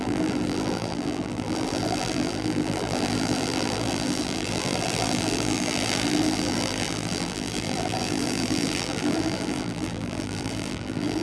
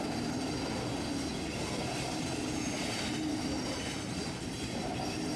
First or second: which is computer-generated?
first